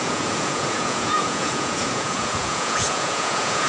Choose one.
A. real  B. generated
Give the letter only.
B